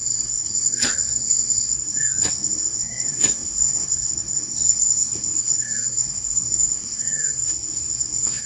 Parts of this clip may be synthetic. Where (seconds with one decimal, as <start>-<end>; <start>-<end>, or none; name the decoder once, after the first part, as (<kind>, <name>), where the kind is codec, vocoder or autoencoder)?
0.0-8.5 (codec, SNAC)